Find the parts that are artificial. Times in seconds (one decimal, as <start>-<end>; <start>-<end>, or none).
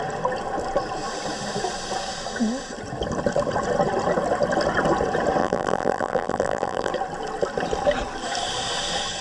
5.4-6.9